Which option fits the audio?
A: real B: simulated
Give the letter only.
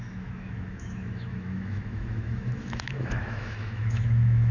B